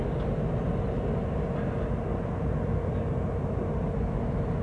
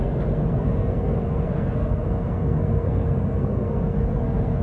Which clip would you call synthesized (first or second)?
second